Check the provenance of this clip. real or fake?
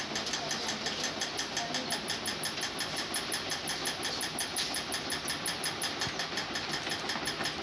real